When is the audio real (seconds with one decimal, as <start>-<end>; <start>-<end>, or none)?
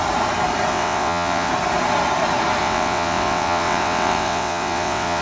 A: 0.0-0.7; 1.5-2.6